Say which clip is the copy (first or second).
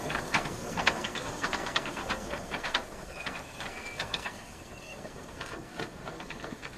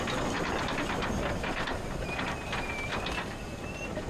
first